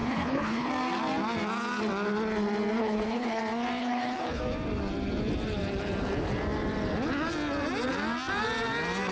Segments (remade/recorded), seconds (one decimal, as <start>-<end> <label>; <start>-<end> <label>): 0.0-0.7 remade; 0.7-2.8 recorded; 2.8-3.4 remade; 3.4-3.8 recorded; 3.8-4.4 remade; 4.4-9.1 recorded